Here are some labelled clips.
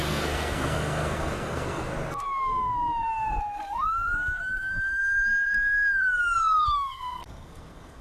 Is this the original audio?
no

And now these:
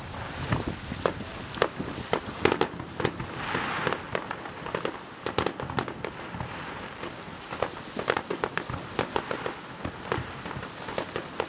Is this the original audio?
yes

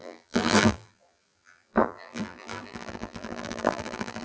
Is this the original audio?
no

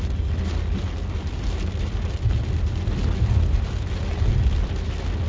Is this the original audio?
yes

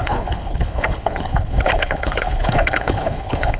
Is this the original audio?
no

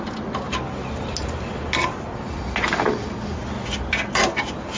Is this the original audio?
yes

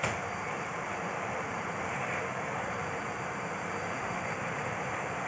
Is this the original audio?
no